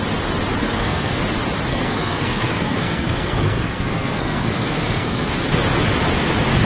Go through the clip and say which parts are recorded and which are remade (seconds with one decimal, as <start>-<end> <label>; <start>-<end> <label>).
0.0-0.6 recorded; 0.6-1.2 remade; 1.2-1.7 recorded; 1.7-5.3 remade; 5.3-6.6 recorded